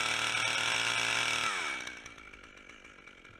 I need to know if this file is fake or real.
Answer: real